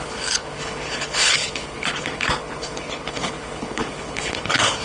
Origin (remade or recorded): remade